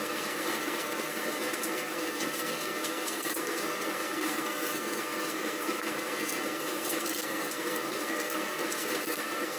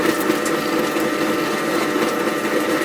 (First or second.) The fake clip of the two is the first